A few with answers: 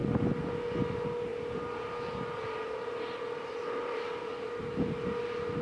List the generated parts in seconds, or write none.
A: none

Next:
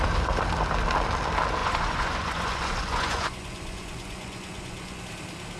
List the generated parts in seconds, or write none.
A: 1.6-5.0 (vocoder, Vocos)

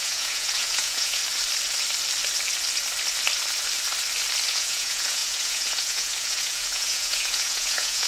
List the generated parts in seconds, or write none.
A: 0.0-1.2 (vocoder, Vocos); 4.5-8.1

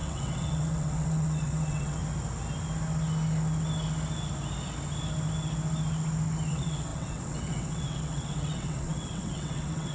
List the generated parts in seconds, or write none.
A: 0.0-2.0 (vocoder, WaveNeXt); 6.5-9.9

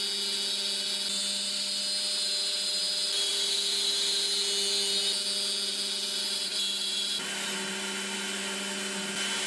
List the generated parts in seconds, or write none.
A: none

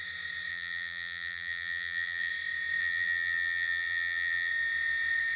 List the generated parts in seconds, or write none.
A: 0.5-2.3 (vocoder, BigVGAN v2); 2.8-4.5

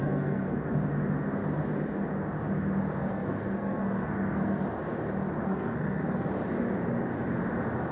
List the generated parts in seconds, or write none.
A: 0.0-0.7 (codec, SNAC); 3.0-4.6; 5.4-6.3

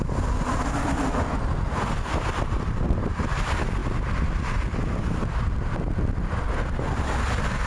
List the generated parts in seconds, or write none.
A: none